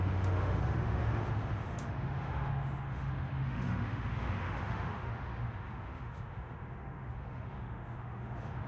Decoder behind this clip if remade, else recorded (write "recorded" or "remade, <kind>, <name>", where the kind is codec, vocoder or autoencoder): remade, autoencoder, DAC-VAE